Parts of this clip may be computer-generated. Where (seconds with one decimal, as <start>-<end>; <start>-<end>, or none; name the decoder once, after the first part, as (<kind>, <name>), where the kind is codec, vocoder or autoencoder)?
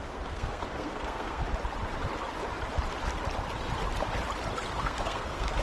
0.0-1.4 (codec, SNAC); 4.8-5.6